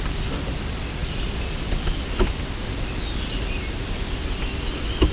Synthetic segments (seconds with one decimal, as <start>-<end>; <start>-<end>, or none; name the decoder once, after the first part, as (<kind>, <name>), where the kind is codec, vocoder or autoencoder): none